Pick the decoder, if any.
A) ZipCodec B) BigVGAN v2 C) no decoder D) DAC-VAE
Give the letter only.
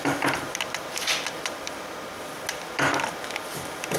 C